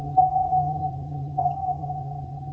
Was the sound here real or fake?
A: fake